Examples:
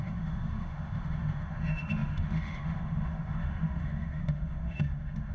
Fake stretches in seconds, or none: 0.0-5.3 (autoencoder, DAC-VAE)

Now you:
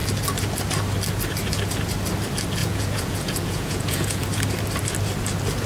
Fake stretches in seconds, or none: 2.6-4.2 (vocoder, Vocos)

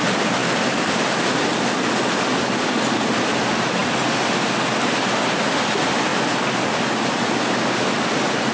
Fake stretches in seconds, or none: 6.1-6.6 (vocoder, BigVGAN v2)

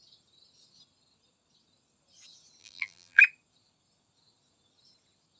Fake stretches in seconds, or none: 2.6-3.2 (vocoder, BigVGAN v2)

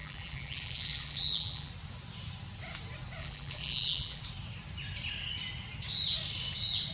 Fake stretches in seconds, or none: 0.0-1.7 (vocoder, BigVGAN v2); 3.2-4.2

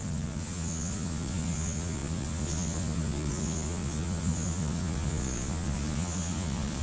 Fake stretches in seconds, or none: 0.0-6.8 (vocoder, Vocos)